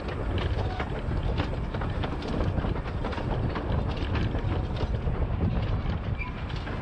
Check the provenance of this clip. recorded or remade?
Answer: recorded